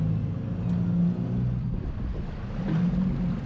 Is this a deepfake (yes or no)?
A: no